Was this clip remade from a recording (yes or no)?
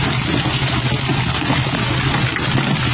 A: no